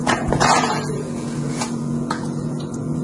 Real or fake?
fake